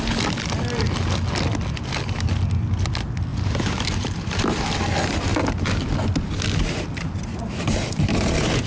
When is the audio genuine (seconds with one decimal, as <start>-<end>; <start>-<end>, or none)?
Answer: 0.0-3.3; 4.1-8.7